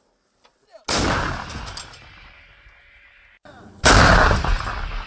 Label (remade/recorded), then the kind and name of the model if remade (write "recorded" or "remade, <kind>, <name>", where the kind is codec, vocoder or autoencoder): recorded